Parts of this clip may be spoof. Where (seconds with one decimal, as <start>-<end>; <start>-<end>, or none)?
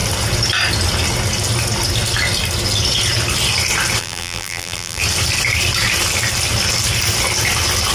4.0-5.0